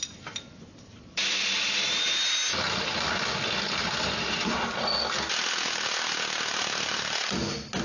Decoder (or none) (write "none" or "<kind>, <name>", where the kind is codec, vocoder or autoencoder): none